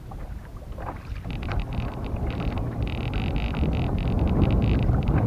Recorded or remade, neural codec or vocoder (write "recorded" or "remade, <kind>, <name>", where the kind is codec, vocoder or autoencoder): recorded